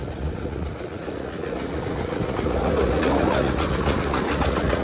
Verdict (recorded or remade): remade